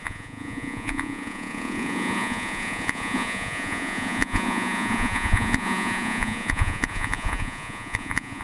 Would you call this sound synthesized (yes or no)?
yes